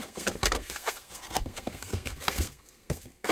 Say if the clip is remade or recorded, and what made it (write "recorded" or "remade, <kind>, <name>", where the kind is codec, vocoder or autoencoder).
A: remade, codec, SNAC